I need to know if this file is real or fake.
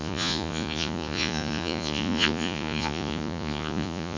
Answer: fake